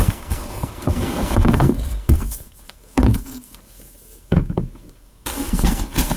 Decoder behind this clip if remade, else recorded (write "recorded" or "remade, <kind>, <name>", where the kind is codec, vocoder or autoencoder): remade, codec, SNAC